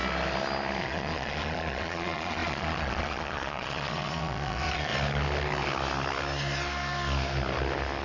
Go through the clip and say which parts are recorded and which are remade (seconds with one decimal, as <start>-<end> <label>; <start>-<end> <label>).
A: 0.0-0.8 recorded; 0.8-4.9 remade; 4.9-8.0 recorded